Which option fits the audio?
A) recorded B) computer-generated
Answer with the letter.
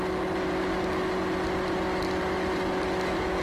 A